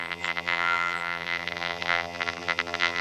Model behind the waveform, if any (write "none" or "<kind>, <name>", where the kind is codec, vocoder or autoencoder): vocoder, BigVGAN v2